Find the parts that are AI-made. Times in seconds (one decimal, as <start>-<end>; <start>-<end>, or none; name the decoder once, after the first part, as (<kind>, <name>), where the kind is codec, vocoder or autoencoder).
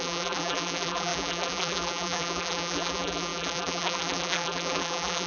0.0-5.3 (vocoder, BigVGAN v2)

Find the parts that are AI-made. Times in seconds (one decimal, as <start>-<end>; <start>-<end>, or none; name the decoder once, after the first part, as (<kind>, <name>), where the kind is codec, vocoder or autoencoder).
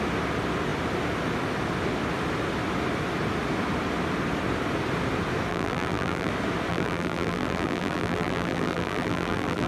5.5-6.3 (vocoder, BigVGAN v2); 6.7-9.7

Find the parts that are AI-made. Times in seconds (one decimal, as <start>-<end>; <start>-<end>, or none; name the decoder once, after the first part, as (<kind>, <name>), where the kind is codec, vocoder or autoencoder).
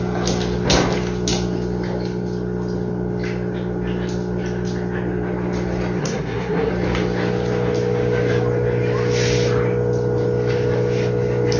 6.0-6.7 (codec, SNAC)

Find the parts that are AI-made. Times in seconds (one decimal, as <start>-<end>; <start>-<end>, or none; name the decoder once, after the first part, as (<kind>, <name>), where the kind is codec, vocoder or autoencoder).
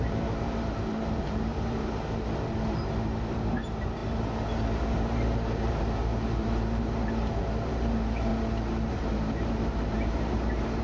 0.0-8.3 (vocoder, BigVGAN v2); 8.9-10.8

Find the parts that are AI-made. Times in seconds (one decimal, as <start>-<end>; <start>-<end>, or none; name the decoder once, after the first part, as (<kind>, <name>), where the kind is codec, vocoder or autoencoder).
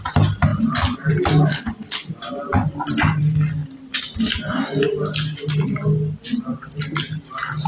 1.5-2.1 (codec, HILCodec)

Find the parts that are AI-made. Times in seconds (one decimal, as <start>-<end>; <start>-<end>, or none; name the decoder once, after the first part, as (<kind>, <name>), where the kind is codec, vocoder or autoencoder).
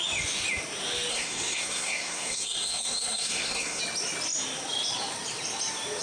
1.1-3.8 (codec, SNAC)